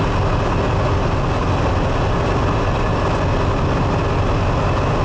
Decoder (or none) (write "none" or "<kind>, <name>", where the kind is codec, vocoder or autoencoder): none